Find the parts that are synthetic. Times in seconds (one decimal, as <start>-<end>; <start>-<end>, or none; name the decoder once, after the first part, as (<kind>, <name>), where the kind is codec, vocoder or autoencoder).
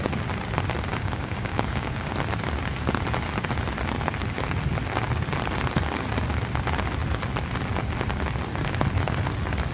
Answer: 0.9-2.1 (codec, DAC)